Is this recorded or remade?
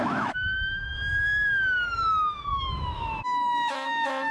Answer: remade